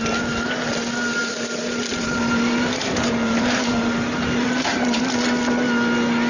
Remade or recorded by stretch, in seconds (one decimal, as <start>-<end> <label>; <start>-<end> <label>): 0.0-1.2 recorded; 1.2-5.0 remade; 5.0-6.3 recorded